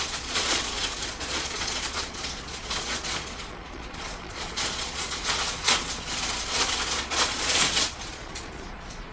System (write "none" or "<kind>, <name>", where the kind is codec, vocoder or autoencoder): vocoder, Vocos